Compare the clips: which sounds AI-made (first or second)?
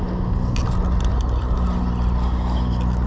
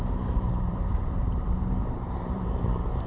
second